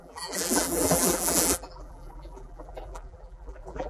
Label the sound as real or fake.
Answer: fake